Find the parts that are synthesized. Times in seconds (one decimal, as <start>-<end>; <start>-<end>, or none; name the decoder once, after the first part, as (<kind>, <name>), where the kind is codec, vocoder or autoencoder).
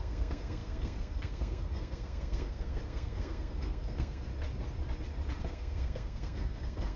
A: 0.0-4.3 (codec, SNAC); 5.4-7.0